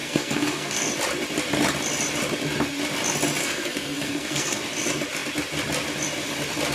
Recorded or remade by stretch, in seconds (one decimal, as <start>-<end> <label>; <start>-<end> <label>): 0.0-0.9 remade; 0.9-3.4 recorded; 3.4-4.6 remade; 4.6-6.7 recorded

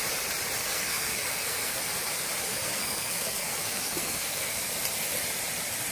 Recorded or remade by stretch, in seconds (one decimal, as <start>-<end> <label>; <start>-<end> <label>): 0.0-0.6 recorded; 0.6-1.8 remade; 1.8-2.5 recorded; 2.5-4.6 remade; 4.6-5.9 recorded